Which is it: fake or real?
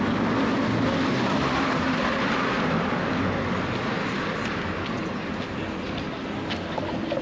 real